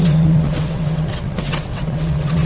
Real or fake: fake